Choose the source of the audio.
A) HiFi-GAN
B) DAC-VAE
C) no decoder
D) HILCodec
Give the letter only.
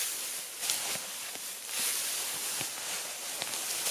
C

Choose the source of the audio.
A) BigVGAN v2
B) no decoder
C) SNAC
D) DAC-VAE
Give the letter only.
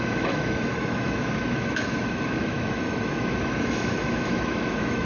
D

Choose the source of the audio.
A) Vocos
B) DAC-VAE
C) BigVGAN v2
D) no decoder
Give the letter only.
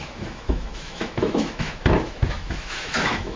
B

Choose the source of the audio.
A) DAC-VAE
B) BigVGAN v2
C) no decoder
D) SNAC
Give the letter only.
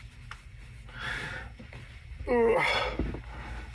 C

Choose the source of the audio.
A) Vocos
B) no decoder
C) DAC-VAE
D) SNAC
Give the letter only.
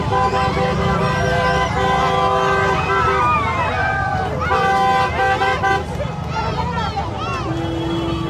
B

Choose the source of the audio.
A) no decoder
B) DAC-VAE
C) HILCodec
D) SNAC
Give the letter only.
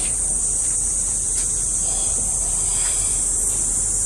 A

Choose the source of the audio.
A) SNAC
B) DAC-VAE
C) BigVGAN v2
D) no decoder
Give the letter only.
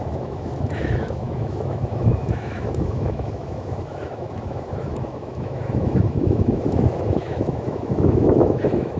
B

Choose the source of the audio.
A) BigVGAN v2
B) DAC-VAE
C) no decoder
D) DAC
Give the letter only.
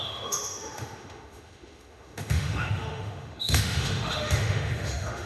B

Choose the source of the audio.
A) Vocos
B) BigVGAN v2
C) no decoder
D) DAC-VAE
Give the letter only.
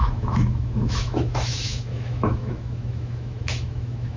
D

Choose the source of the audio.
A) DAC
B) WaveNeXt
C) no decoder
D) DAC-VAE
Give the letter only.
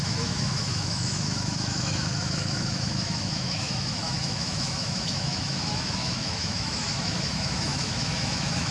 D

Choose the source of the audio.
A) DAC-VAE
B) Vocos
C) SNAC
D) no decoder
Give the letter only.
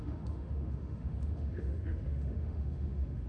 A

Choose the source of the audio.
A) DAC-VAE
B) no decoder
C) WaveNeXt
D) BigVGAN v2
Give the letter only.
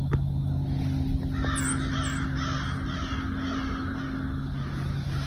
B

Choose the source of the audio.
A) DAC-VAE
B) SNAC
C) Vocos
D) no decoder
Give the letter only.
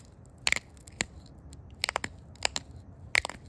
D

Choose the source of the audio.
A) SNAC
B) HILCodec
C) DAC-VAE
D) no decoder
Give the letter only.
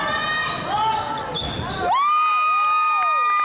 D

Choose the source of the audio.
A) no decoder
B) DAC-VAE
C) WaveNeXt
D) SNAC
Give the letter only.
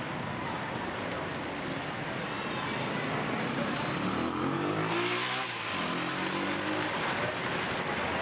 A